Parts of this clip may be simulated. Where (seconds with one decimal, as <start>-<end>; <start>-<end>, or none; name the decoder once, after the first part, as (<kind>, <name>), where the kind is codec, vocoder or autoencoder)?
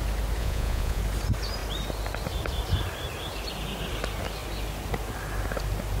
0.4-1.0 (vocoder, Vocos)